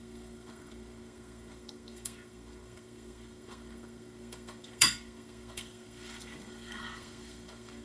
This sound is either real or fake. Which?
fake